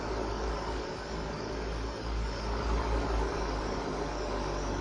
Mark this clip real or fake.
fake